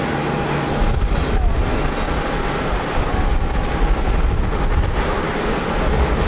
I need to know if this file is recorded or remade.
recorded